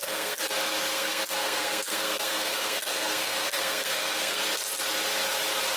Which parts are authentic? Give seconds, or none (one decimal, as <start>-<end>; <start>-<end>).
0.5-0.9; 4.4-5.8

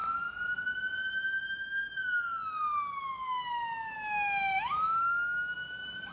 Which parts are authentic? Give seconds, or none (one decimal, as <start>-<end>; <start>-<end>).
0.0-6.1